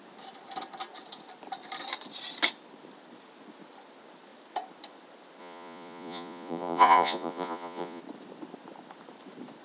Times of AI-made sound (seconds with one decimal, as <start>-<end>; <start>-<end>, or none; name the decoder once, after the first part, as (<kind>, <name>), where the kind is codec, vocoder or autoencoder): 5.4-8.0 (vocoder, Vocos)